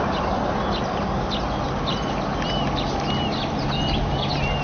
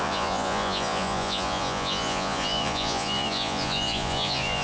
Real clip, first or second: first